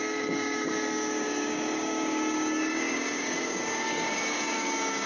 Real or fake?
fake